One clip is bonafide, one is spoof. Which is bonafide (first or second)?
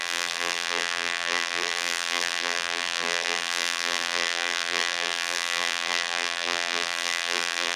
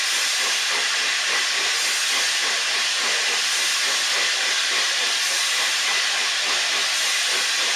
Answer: second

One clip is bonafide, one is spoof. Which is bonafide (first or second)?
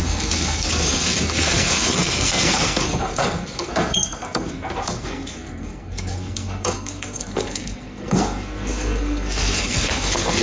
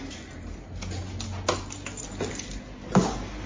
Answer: second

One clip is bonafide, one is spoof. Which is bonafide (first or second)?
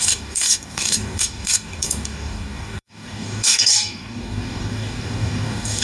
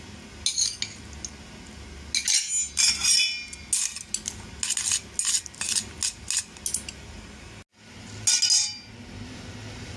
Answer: second